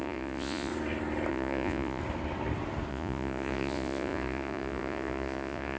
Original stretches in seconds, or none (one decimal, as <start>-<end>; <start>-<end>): 0.7-1.3; 2.0-2.9